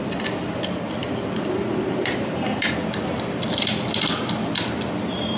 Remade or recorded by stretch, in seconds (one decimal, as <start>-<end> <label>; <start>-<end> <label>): 0.0-1.0 recorded; 1.0-2.7 remade; 2.7-5.4 recorded